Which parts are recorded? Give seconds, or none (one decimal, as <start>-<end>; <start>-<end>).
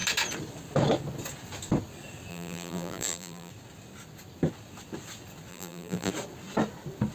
0.0-2.3; 3.5-5.5; 6.1-7.1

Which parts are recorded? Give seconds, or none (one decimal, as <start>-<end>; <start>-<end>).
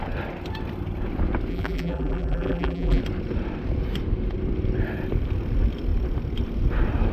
0.0-1.5; 3.0-7.1